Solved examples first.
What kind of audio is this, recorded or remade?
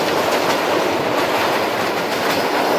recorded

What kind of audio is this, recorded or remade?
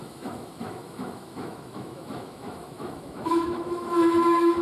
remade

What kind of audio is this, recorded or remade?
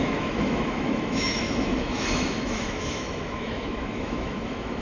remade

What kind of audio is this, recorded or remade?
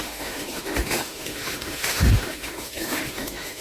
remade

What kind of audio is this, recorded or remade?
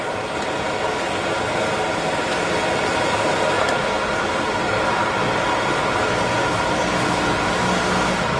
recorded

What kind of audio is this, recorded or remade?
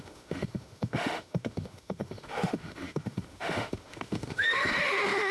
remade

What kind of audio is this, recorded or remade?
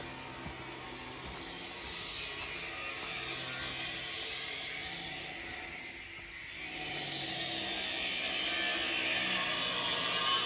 recorded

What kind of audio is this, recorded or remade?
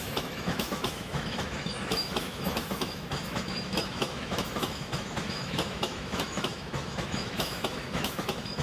remade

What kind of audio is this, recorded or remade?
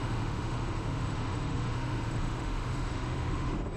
remade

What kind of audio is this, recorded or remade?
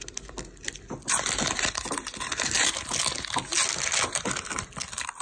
recorded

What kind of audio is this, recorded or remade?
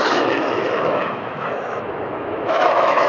remade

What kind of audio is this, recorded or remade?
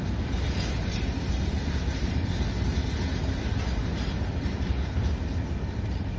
recorded